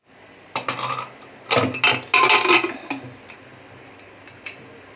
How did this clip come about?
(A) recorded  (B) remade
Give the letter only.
A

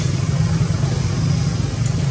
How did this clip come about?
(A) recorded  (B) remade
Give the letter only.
A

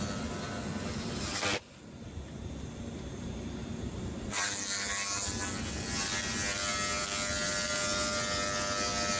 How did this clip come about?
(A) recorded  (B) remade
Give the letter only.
A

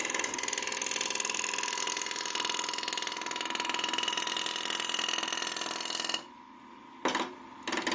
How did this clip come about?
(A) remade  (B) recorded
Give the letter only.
B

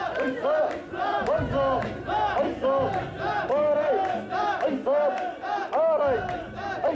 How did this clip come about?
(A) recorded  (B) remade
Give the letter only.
A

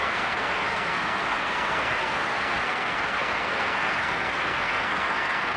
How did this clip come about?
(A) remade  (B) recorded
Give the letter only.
A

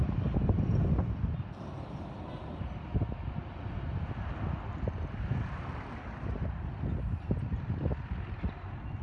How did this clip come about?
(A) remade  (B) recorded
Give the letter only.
B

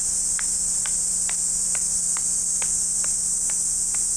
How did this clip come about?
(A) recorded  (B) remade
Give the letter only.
A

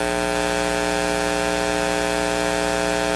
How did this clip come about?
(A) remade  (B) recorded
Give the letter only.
B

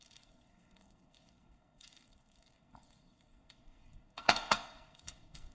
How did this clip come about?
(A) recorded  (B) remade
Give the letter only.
B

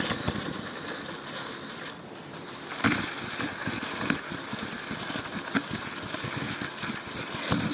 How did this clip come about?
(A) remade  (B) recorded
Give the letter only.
B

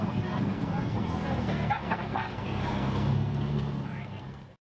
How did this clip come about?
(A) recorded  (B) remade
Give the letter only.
B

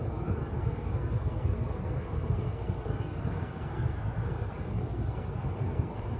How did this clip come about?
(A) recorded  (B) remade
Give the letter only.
B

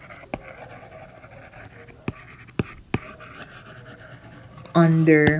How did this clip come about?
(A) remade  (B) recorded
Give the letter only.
B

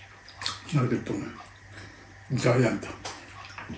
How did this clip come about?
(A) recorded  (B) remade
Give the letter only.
A